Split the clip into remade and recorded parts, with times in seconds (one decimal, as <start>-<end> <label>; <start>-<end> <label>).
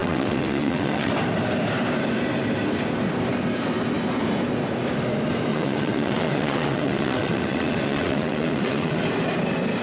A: 0.0-1.1 remade; 1.1-5.5 recorded; 5.5-9.0 remade; 9.0-9.8 recorded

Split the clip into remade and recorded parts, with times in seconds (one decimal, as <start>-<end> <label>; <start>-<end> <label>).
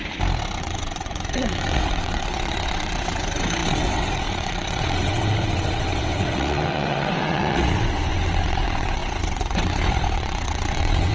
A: 0.0-0.6 recorded; 0.6-11.1 remade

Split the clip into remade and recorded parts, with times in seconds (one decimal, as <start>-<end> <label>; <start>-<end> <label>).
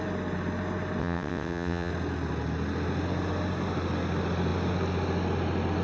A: 0.0-1.0 recorded; 1.0-1.9 remade; 1.9-5.8 recorded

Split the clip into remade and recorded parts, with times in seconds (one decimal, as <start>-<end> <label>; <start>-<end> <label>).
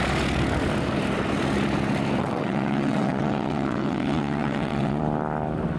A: 0.0-2.2 recorded; 2.2-5.0 remade; 5.0-5.8 recorded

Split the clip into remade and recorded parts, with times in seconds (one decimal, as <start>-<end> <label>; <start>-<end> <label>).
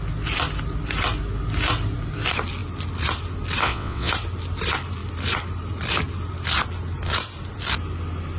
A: 0.0-3.6 recorded; 3.6-4.1 remade; 4.1-8.4 recorded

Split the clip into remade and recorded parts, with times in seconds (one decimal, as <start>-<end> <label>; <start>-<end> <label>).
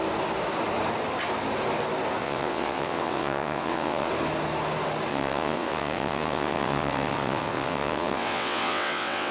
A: 0.0-2.2 recorded; 2.2-4.1 remade; 4.1-5.1 recorded; 5.1-9.3 remade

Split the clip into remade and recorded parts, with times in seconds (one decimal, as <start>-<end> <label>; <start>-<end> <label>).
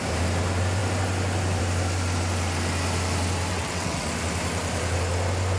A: 0.0-3.5 recorded; 3.5-4.1 remade; 4.1-5.6 recorded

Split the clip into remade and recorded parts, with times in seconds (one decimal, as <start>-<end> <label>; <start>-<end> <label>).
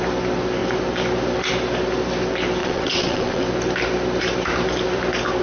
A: 0.0-2.6 recorded; 2.6-3.4 remade; 3.4-5.4 recorded